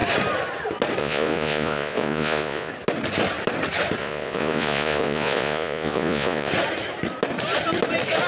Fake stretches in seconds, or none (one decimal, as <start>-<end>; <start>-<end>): 1.0-2.7; 4.0-6.5